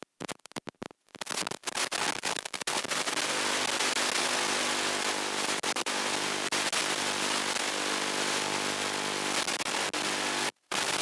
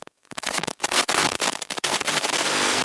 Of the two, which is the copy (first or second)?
second